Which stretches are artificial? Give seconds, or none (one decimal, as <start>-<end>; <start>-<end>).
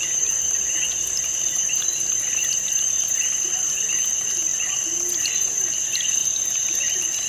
0.0-6.2